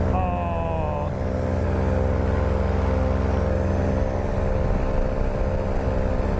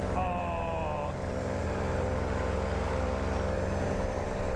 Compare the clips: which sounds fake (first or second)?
second